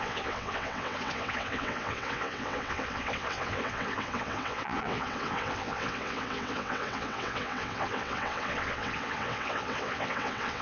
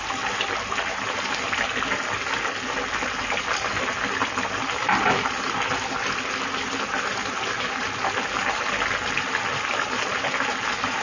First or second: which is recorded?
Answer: second